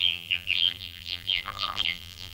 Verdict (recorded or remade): remade